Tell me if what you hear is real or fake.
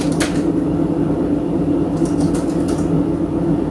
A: real